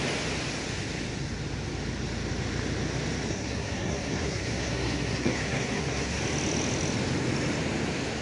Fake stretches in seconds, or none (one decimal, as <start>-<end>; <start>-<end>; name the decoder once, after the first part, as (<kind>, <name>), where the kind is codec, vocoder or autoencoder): 3.3-6.2 (codec, SNAC)